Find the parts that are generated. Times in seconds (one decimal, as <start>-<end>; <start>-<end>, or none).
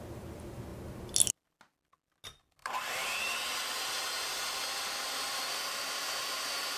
2.6-3.6